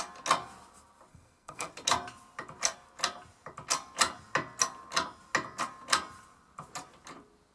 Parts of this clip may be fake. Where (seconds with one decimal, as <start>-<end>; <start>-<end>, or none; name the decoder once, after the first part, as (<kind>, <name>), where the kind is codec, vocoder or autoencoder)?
1.1-1.7 (codec, SNAC)